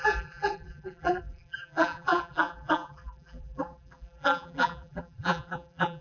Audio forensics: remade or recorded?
remade